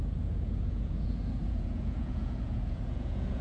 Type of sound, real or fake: fake